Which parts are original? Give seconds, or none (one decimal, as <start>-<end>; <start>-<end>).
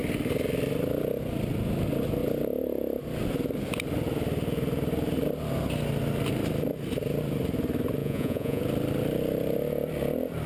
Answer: 0.0-8.0; 8.6-10.5